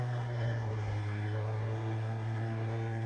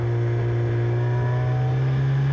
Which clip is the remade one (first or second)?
first